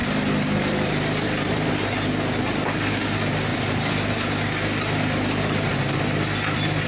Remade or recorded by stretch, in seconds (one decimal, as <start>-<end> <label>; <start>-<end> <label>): 0.0-1.7 remade; 1.7-3.5 recorded; 3.5-4.3 remade; 4.3-5.7 recorded; 5.7-6.9 remade